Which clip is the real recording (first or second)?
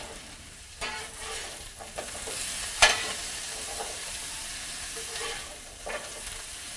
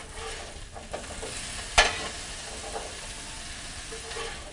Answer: second